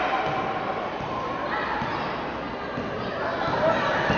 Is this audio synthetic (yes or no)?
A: no